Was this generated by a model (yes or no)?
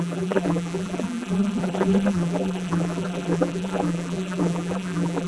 yes